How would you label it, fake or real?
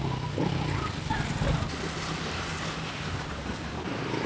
real